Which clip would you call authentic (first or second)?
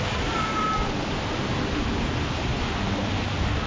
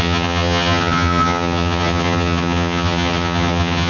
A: first